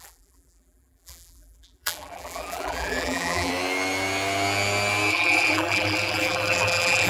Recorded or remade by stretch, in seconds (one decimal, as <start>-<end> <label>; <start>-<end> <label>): 0.0-3.5 remade; 3.5-5.1 recorded; 5.1-7.1 remade